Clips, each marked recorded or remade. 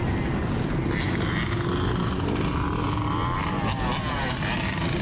recorded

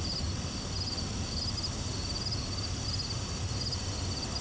recorded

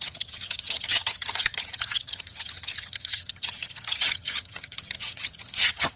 remade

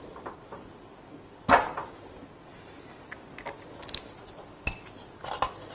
recorded